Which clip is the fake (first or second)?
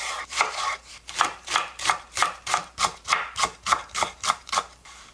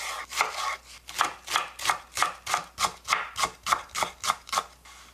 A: first